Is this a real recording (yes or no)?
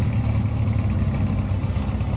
yes